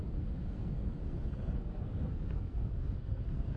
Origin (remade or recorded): remade